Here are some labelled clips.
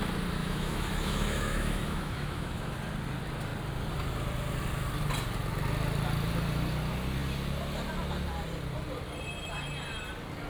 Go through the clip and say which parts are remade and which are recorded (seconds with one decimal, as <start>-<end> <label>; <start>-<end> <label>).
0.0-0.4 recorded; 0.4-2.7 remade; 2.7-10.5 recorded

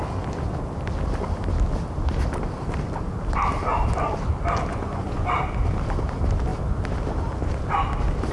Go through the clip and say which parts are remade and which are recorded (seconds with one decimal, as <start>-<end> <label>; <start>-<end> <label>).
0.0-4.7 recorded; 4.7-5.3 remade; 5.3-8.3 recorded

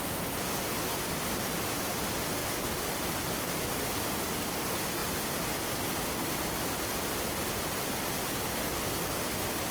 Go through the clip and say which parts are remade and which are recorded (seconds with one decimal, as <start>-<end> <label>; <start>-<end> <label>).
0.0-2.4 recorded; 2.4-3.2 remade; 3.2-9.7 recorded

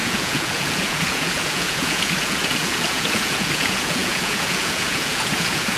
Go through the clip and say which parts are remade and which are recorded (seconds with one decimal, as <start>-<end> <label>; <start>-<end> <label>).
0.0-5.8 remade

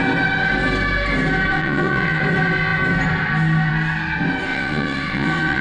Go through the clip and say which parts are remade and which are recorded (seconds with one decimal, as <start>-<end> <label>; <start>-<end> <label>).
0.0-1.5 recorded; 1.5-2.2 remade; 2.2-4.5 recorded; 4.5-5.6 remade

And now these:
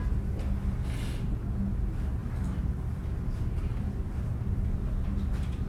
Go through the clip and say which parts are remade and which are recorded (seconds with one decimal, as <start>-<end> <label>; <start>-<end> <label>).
0.0-2.2 recorded; 2.2-4.2 remade; 4.2-5.7 recorded